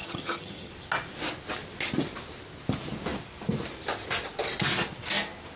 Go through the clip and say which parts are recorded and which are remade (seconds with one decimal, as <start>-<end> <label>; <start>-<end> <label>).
0.0-0.7 remade; 0.7-5.6 recorded